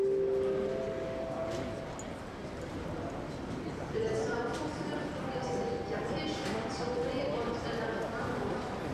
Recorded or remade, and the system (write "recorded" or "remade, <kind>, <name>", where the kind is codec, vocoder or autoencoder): recorded